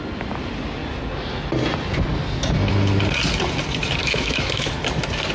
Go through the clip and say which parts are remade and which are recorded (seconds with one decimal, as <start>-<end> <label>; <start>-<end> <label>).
0.0-4.0 recorded; 4.0-4.7 remade; 4.7-5.3 recorded

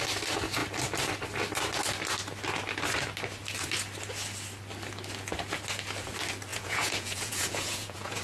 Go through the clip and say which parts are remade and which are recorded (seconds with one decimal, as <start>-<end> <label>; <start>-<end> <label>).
0.0-6.5 recorded; 6.5-8.2 remade

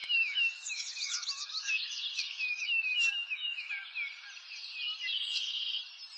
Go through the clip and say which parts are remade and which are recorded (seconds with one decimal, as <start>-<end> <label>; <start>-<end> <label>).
0.0-3.7 remade; 3.7-5.1 recorded; 5.1-5.6 remade; 5.6-6.2 recorded